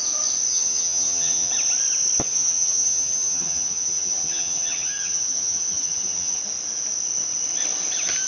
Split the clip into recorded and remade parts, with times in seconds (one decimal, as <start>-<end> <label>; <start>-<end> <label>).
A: 0.0-0.5 recorded; 0.5-1.5 remade; 1.5-2.2 recorded; 2.2-6.4 remade; 6.4-8.3 recorded